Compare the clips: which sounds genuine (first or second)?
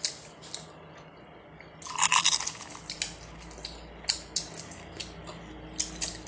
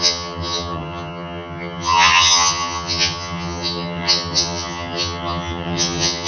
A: first